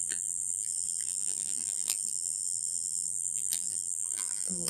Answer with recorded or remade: remade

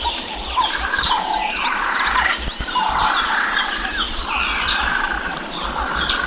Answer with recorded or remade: remade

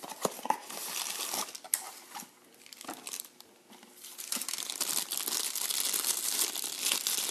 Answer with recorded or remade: recorded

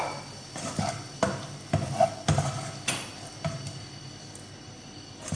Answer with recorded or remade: recorded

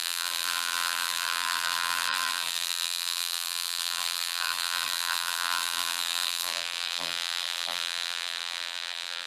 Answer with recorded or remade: remade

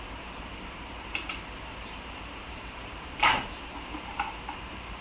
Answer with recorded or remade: remade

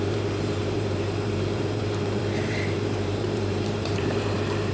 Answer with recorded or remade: remade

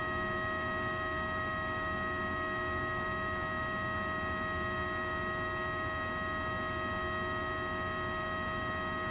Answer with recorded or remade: recorded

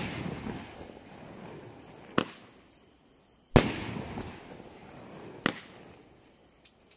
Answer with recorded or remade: recorded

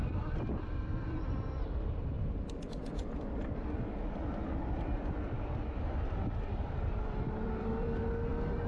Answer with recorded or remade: remade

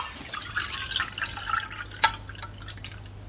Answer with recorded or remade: recorded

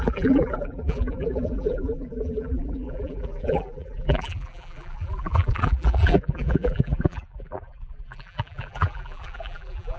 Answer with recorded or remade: remade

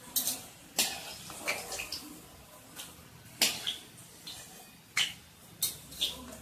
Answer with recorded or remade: recorded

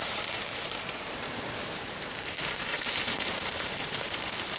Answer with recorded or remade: remade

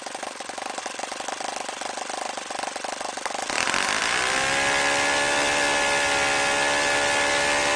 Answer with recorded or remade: recorded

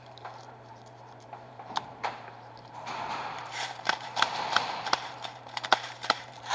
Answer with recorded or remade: remade